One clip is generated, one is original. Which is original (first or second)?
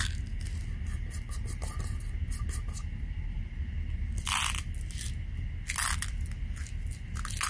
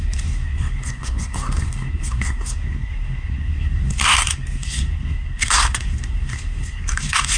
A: first